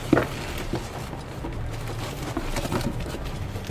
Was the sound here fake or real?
real